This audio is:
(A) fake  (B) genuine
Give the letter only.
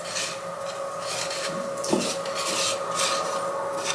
B